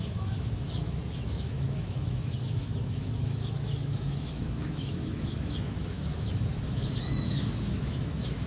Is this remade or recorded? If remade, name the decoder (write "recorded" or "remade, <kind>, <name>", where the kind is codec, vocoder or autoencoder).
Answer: remade, autoencoder, DAC-VAE